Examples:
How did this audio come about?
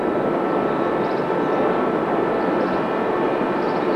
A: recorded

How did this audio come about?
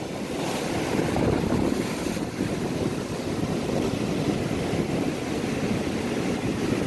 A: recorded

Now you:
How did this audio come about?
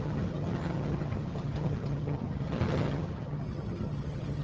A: remade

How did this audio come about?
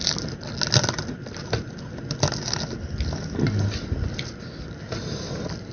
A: recorded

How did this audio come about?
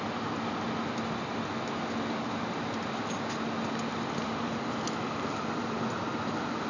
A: recorded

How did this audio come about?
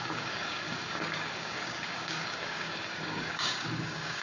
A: remade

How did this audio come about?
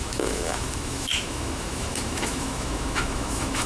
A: remade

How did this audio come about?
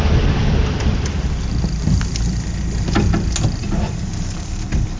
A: recorded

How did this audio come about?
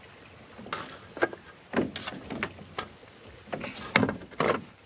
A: recorded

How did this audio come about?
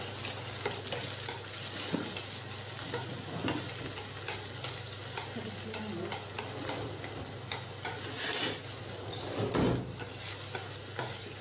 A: recorded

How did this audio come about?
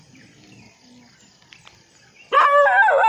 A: recorded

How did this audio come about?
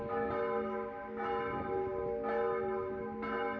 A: recorded